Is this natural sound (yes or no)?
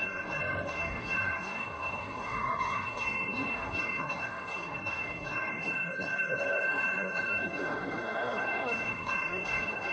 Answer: no